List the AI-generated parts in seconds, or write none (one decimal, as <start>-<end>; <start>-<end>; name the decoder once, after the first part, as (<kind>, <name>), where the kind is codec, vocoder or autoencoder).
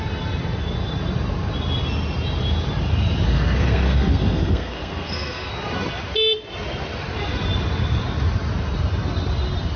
3.3-5.5 (codec, SNAC)